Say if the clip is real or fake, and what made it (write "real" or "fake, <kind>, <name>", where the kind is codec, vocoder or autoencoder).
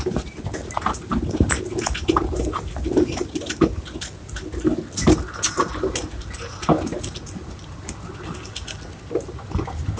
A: real